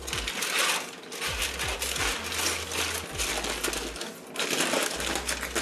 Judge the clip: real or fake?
real